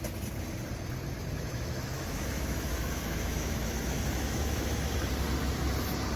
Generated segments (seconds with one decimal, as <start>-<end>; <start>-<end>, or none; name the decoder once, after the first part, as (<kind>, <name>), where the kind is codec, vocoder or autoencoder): 1.2-4.9 (autoencoder, DAC-VAE)